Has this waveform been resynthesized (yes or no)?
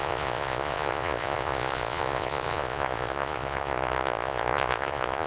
yes